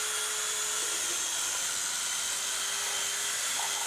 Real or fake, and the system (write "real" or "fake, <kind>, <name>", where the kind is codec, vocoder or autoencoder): real